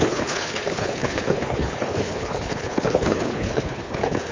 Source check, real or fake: fake